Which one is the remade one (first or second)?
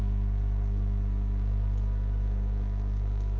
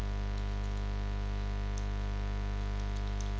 first